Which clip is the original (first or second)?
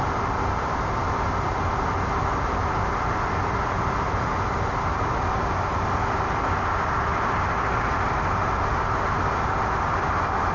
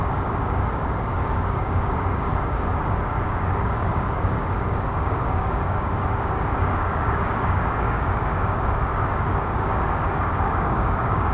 first